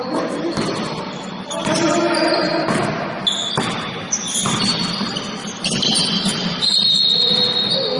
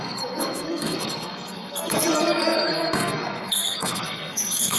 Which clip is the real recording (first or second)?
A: first